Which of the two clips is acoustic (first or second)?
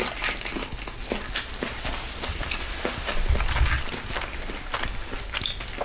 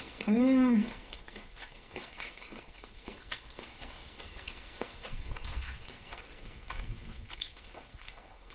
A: first